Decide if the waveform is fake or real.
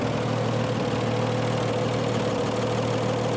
real